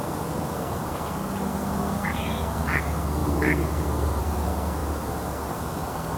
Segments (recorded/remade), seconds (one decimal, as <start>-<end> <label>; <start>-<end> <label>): 0.0-6.2 remade